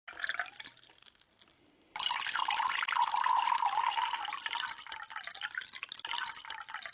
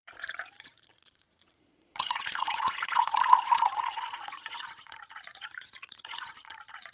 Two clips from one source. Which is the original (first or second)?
first